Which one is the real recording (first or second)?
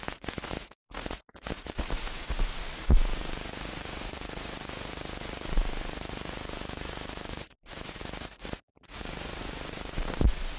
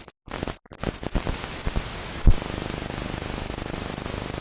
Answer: second